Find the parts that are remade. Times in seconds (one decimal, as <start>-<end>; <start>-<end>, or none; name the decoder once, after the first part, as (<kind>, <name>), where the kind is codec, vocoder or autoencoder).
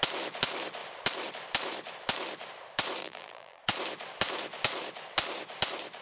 3.0-3.6 (vocoder, BigVGAN v2)